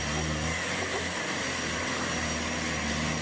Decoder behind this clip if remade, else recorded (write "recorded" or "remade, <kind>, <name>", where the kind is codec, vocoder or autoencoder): recorded